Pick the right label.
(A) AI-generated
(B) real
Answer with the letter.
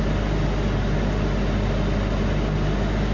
B